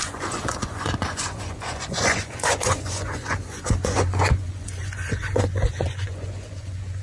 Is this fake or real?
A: fake